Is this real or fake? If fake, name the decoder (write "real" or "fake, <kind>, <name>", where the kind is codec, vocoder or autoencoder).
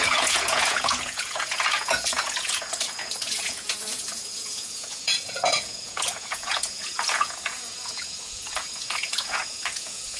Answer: fake, vocoder, Vocos